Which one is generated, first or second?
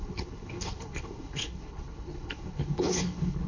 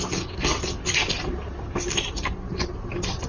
first